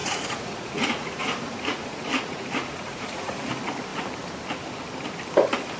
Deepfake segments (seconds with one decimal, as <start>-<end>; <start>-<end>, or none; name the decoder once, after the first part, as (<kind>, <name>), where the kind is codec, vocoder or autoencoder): 0.0-3.5 (vocoder, Vocos)